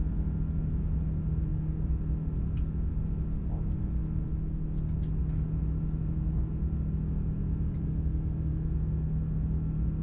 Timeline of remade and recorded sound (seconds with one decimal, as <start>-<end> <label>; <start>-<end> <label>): 0.0-10.0 recorded

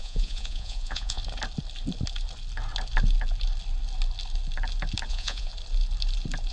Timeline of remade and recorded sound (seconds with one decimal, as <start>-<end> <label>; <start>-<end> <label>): 0.0-1.2 remade; 1.2-5.1 recorded; 5.1-5.5 remade; 5.5-6.5 recorded

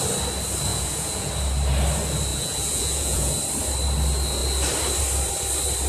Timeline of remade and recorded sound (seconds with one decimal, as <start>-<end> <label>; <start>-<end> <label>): 0.0-0.7 recorded; 0.7-1.3 remade; 1.3-2.3 recorded; 2.3-3.3 remade; 3.3-5.9 recorded

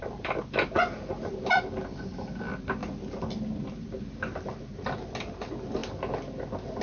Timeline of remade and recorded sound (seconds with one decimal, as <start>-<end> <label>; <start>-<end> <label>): 0.0-6.8 recorded

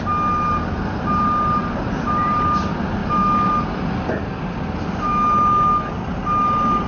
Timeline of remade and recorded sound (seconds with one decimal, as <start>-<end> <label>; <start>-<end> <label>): 0.0-6.9 recorded

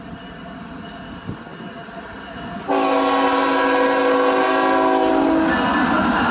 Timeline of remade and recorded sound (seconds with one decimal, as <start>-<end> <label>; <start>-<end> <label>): 0.0-6.3 recorded